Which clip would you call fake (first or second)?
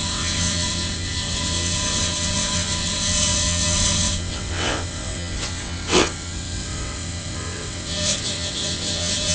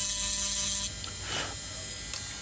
first